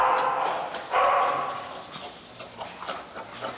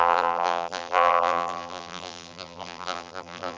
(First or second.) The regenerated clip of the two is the second